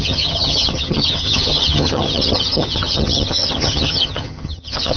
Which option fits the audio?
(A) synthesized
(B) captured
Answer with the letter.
A